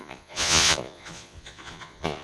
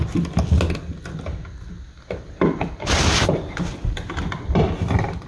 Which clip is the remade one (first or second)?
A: first